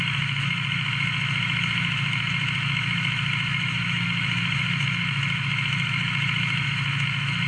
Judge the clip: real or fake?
fake